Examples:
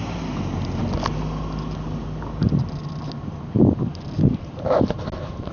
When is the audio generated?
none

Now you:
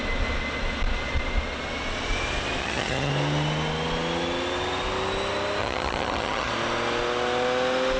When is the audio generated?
2.6-3.1 (vocoder, HiFi-GAN); 5.6-6.5

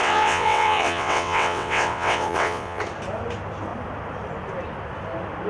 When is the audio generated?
0.0-2.8 (vocoder, WaveNeXt)

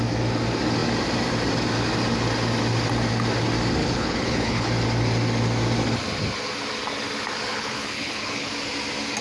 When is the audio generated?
3.8-4.7 (codec, HILCodec); 7.5-8.5

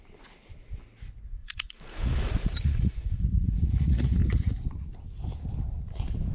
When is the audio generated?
1.4-4.6 (vocoder, Vocos)

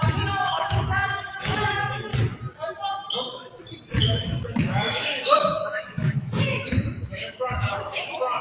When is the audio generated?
0.0-2.1 (autoencoder, DAC-VAE); 4.0-8.4